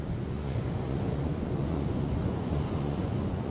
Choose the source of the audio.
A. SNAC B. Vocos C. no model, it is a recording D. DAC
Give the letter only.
B